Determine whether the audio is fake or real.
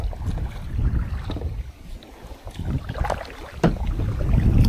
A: real